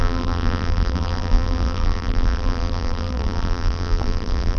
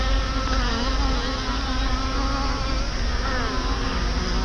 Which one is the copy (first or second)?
first